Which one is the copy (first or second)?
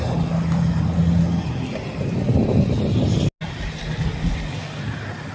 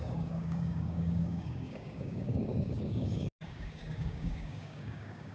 second